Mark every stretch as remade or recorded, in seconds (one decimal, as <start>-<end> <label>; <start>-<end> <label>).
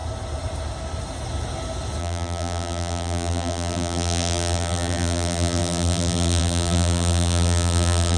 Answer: 0.0-2.0 recorded; 2.0-8.2 remade